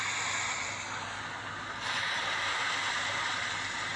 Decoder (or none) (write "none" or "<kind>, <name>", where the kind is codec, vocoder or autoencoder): none